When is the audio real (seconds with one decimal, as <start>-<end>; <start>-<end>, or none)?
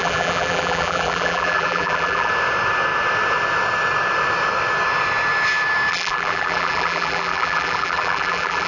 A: 2.3-5.9